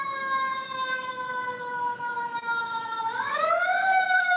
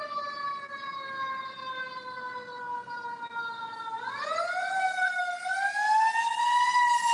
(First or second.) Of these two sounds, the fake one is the first